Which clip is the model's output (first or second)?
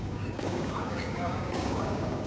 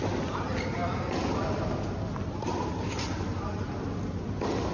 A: first